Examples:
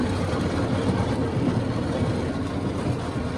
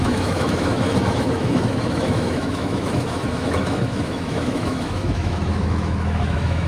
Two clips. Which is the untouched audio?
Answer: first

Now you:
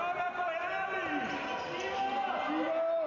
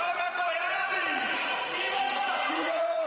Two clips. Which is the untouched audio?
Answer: first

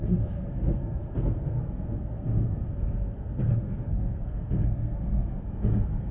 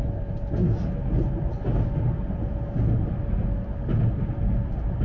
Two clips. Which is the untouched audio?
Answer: second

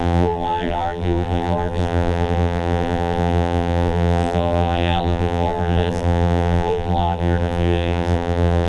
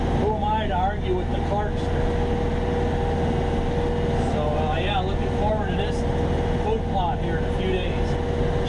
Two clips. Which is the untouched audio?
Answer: second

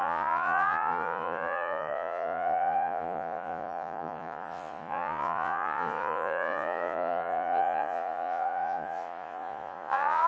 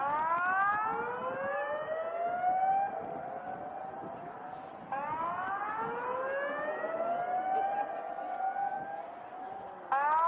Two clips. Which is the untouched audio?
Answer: second